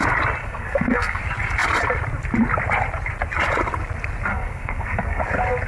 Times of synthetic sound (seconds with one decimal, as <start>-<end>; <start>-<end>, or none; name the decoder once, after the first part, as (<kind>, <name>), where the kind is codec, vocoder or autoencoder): 0.4-1.2 (codec, SNAC); 4.3-5.2